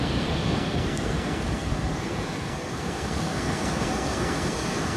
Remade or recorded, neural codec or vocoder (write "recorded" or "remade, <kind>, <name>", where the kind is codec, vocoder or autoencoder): remade, codec, SNAC